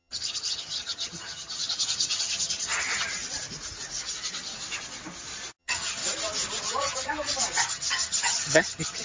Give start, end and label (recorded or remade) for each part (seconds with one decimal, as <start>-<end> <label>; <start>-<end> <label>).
0.0-3.1 remade; 3.1-5.6 recorded; 5.6-6.0 remade; 6.0-6.6 recorded; 6.6-7.1 remade; 7.1-7.7 recorded; 7.7-9.0 remade